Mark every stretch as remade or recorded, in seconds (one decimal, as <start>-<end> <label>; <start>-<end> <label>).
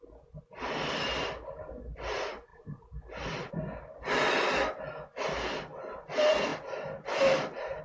0.0-7.8 recorded